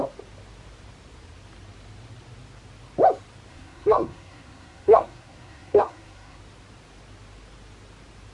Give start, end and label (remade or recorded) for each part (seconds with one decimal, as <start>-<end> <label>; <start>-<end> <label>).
0.0-3.5 recorded; 3.5-6.4 remade; 6.4-8.3 recorded